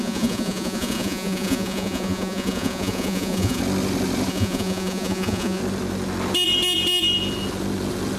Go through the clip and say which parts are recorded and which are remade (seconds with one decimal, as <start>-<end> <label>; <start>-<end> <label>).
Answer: 0.0-3.6 remade; 3.6-4.3 recorded; 4.3-5.6 remade; 5.6-8.2 recorded